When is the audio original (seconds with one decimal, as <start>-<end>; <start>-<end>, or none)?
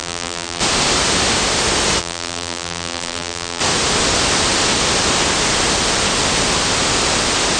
0.6-2.0; 3.6-7.6